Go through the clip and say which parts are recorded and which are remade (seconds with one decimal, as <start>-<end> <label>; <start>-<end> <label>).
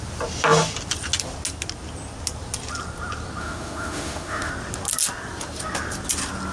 0.0-3.4 recorded; 3.4-4.5 remade; 4.5-6.5 recorded